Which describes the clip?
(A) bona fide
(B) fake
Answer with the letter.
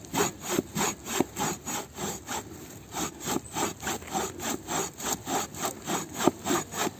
A